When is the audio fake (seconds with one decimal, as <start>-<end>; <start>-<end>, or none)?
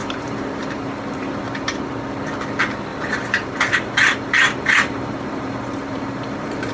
0.0-1.4; 2.9-6.7